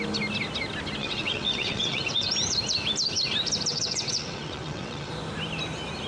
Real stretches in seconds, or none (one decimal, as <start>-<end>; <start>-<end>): 0.0-1.0; 2.3-3.7; 5.1-6.1